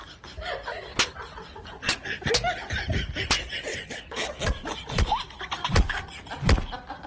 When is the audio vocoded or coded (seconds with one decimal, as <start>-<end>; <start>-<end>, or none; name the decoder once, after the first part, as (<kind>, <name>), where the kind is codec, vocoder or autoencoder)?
3.7-4.4 (codec, HILCodec)